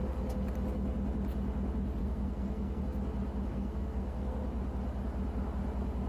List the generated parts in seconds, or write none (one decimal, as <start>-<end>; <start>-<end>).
2.0-2.8; 3.5-4.4